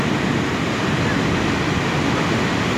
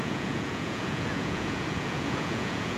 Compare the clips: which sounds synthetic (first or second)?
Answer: second